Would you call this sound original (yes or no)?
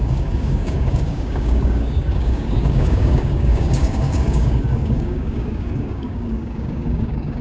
no